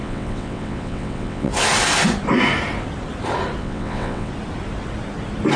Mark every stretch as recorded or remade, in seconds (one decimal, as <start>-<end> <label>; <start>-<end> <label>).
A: 0.0-1.5 remade; 1.5-3.6 recorded; 3.6-4.3 remade; 4.3-5.6 recorded